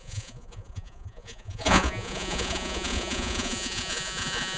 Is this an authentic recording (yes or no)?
no